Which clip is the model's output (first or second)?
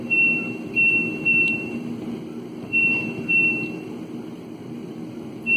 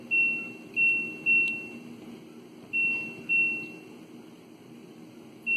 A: first